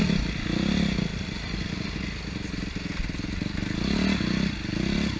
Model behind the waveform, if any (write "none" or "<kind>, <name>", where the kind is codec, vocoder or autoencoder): none